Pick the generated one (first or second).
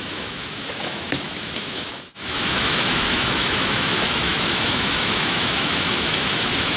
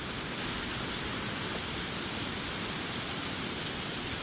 first